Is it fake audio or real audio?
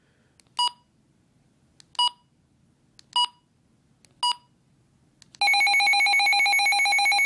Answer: real